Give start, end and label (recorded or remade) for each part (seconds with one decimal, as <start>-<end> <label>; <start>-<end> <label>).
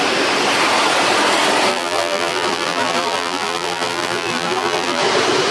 0.0-1.7 recorded; 1.7-5.0 remade; 5.0-5.5 recorded